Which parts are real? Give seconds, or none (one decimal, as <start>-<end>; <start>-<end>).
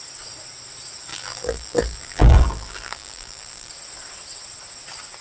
0.0-1.1; 3.7-5.2